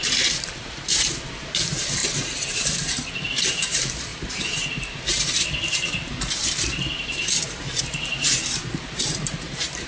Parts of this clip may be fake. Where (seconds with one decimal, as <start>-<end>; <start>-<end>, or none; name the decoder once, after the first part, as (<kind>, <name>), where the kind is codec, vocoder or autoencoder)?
0.0-9.9 (vocoder, BigVGAN v2)